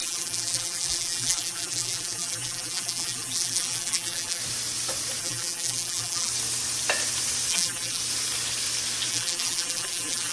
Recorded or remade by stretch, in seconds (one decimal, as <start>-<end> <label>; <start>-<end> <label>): 0.0-4.4 remade; 4.4-5.2 recorded; 5.2-6.3 remade; 6.3-7.5 recorded; 7.5-8.0 remade; 8.0-9.1 recorded; 9.1-10.3 remade